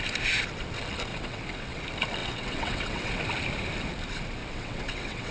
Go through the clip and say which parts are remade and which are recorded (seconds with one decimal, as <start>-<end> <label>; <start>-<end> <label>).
0.0-1.1 recorded; 1.1-1.8 remade; 1.8-2.2 recorded; 2.2-3.2 remade; 3.2-4.4 recorded; 4.4-5.3 remade